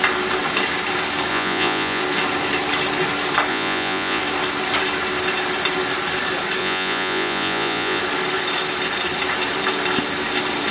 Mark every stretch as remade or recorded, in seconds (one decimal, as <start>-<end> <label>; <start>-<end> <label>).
0.0-1.3 recorded; 1.3-2.0 remade; 2.0-3.5 recorded; 3.5-4.2 remade; 4.2-6.6 recorded; 6.6-8.0 remade; 8.0-10.7 recorded